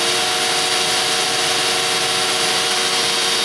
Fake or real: real